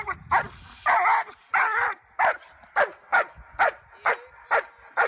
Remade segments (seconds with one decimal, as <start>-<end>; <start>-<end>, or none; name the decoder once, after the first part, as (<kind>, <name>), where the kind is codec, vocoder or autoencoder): none